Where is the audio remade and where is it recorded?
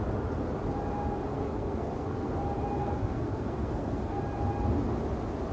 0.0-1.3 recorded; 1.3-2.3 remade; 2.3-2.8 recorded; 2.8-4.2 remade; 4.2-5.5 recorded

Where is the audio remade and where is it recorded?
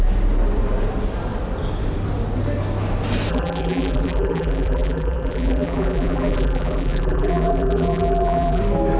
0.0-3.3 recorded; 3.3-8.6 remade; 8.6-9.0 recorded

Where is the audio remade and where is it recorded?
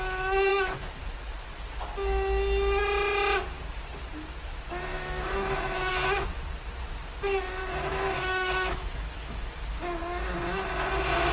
0.0-0.5 recorded; 0.5-1.0 remade; 1.0-4.9 recorded; 4.9-5.9 remade; 5.9-7.6 recorded; 7.6-9.8 remade; 9.8-11.3 recorded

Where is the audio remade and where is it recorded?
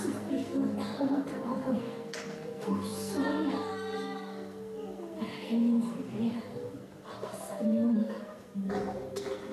0.0-9.5 remade